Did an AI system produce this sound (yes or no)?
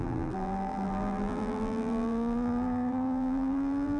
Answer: yes